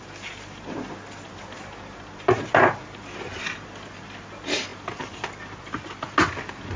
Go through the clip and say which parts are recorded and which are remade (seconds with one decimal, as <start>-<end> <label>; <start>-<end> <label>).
0.0-6.8 recorded